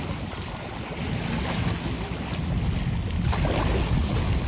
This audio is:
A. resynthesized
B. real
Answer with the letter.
B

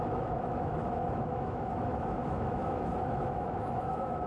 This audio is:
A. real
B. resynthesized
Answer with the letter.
B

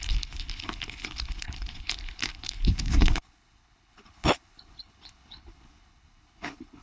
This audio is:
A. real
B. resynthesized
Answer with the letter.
B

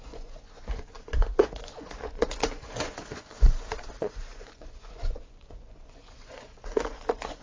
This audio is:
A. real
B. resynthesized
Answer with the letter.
B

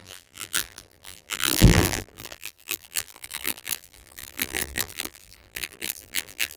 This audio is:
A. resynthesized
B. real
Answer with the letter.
A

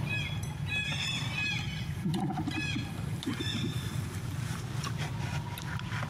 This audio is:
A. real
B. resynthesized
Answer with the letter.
A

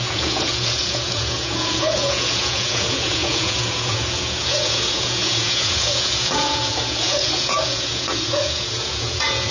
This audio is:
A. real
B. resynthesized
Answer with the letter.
B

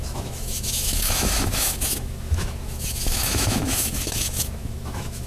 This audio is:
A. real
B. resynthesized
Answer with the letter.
B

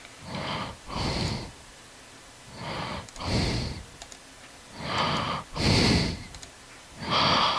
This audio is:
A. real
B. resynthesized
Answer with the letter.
A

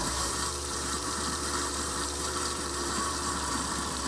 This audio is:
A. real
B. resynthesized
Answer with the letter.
B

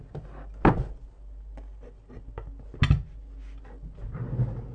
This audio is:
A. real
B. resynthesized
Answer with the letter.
A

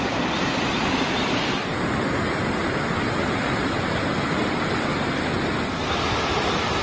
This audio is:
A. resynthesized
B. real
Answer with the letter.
B